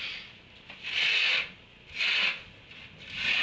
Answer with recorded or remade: recorded